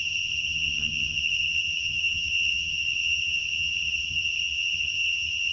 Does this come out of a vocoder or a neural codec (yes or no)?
yes